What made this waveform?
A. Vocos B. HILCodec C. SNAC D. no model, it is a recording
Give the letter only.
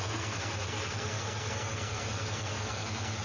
C